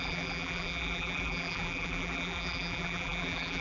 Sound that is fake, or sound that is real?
fake